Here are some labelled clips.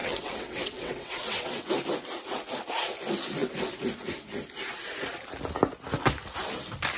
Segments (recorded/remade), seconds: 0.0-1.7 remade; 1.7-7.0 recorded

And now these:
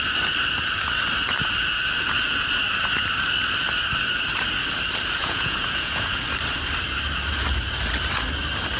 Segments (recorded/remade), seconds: 0.0-5.2 recorded; 5.2-6.2 remade; 6.2-8.8 recorded

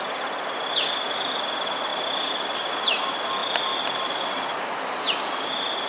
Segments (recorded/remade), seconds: 0.0-5.9 recorded

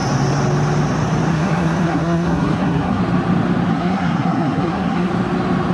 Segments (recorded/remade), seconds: 0.0-1.3 recorded; 1.3-3.0 remade; 3.0-3.7 recorded; 3.7-5.1 remade; 5.1-5.7 recorded

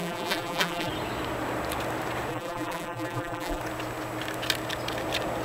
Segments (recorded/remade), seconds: 0.0-0.9 remade; 0.9-2.3 recorded; 2.3-3.6 remade; 3.6-5.4 recorded